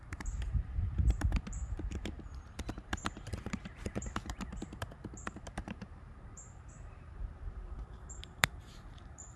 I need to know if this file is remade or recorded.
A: remade